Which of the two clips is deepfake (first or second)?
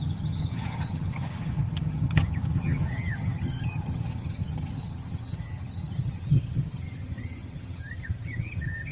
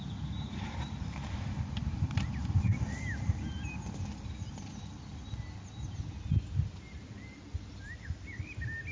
first